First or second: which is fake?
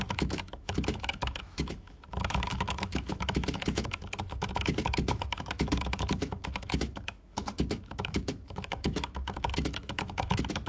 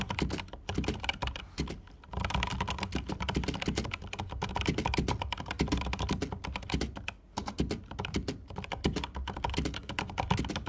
first